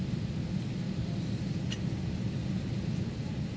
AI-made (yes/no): no